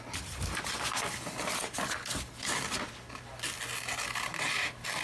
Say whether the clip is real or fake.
real